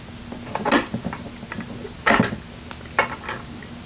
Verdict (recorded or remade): recorded